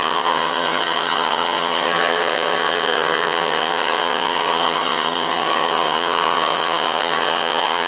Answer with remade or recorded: remade